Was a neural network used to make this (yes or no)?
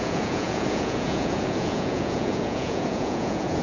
yes